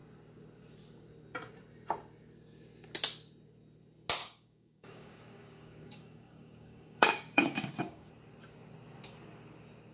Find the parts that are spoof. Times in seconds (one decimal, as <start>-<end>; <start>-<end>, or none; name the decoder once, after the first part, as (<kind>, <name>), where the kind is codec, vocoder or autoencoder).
4.2-8.1 (codec, DAC)